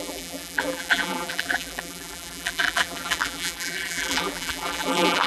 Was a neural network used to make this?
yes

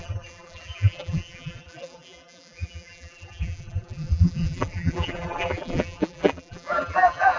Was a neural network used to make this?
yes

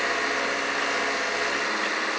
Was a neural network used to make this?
no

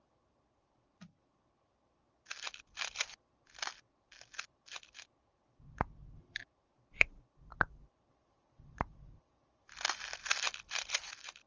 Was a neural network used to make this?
no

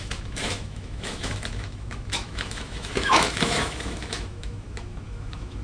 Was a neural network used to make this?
yes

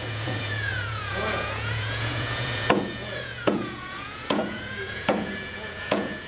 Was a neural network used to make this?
yes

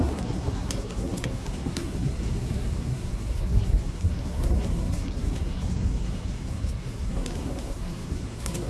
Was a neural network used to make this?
yes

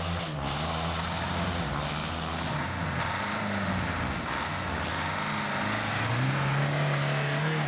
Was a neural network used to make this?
no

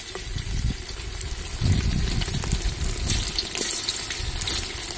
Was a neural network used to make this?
no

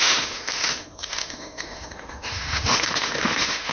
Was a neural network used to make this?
yes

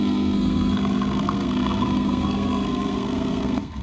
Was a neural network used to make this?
yes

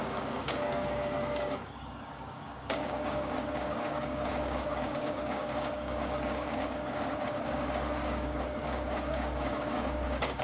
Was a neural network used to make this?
yes